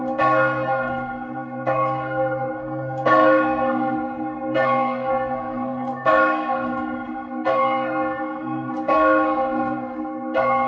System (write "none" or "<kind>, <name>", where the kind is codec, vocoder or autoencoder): codec, SNAC